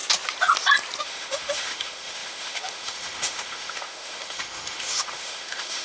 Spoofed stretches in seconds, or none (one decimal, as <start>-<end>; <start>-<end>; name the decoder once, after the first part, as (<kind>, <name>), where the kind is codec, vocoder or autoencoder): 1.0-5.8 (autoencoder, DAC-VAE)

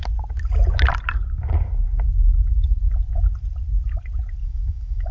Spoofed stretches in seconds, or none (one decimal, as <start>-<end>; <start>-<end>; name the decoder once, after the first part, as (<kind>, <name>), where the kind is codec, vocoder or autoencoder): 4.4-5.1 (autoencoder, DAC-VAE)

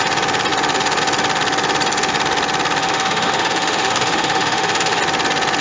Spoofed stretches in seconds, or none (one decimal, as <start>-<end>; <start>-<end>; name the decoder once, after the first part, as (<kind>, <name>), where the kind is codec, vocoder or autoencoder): 2.8-5.0 (autoencoder, DAC-VAE)

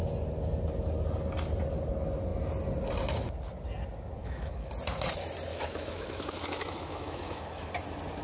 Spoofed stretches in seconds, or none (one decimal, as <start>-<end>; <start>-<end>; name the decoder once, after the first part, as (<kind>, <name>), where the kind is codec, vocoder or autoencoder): 4.2-4.7 (autoencoder, DAC-VAE); 5.5-7.7